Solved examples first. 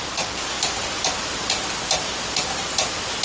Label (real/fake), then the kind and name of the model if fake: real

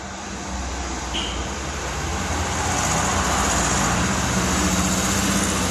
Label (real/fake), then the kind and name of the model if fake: real